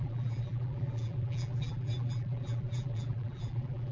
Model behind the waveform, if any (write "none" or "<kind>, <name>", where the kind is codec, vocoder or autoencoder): vocoder, BigVGAN v2